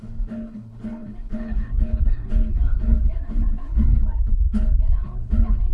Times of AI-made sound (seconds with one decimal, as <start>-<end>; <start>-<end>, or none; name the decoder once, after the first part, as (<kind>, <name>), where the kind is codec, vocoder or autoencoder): 0.0-5.7 (codec, HILCodec)